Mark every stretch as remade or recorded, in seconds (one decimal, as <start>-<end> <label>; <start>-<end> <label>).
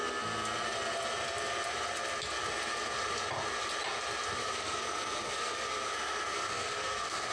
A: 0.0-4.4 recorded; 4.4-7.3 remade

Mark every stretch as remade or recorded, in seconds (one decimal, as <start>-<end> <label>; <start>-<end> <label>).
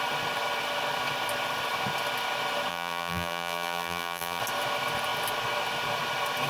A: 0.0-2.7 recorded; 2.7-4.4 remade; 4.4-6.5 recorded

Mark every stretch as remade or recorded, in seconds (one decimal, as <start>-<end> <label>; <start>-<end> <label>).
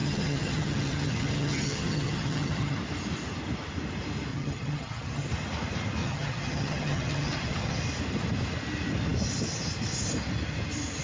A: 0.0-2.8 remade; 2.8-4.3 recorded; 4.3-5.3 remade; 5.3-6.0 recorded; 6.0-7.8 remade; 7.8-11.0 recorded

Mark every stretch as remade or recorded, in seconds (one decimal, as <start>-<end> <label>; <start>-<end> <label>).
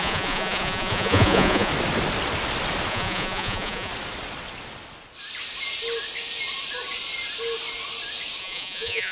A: 0.0-1.7 remade; 1.7-2.9 recorded; 2.9-3.9 remade; 3.9-8.4 recorded; 8.4-9.1 remade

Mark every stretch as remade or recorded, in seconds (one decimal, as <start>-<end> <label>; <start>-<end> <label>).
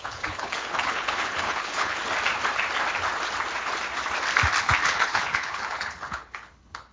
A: 0.0-2.0 remade; 2.0-4.6 recorded; 4.6-6.9 remade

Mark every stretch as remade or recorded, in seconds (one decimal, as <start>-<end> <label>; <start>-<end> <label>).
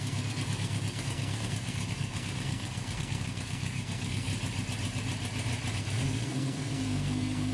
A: 0.0-4.3 remade; 4.3-5.8 recorded; 5.8-7.5 remade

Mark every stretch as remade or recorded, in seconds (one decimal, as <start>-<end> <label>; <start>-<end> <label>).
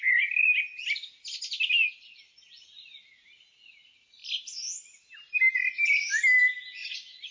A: 0.0-6.8 recorded; 6.8-7.3 remade